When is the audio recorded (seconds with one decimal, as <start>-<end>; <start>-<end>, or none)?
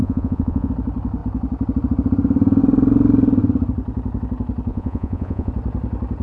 0.7-4.7; 5.5-6.2